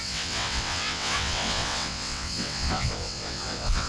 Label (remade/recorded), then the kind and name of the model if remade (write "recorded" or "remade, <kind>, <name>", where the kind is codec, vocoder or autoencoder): remade, vocoder, WaveNeXt